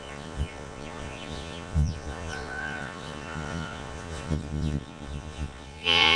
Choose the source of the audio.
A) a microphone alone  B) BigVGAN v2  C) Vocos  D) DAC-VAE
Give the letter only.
C